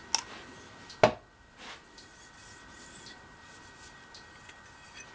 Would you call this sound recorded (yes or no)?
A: yes